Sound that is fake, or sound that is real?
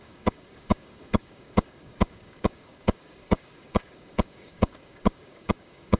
fake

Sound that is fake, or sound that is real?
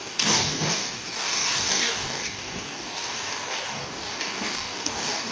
fake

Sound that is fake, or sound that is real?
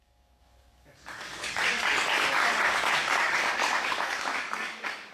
fake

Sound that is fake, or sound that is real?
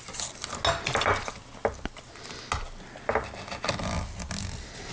real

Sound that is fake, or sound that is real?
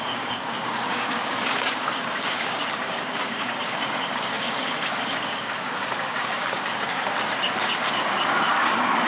fake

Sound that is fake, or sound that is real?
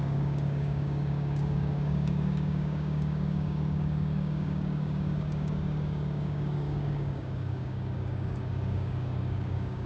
fake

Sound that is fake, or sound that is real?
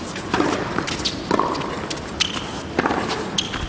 real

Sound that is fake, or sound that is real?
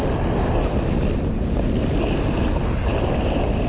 real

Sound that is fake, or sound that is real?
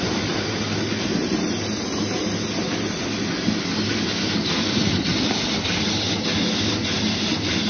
real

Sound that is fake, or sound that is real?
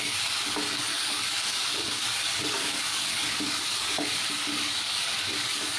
fake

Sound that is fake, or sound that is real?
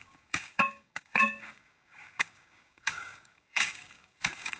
fake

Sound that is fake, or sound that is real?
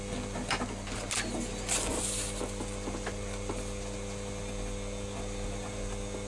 real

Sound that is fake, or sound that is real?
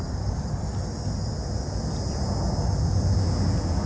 real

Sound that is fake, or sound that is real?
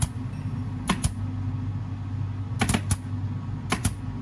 real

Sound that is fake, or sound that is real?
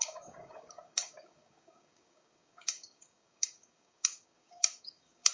fake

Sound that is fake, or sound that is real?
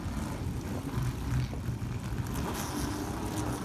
real